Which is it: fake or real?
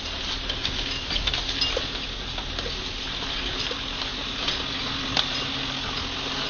real